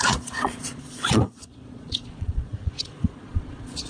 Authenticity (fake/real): fake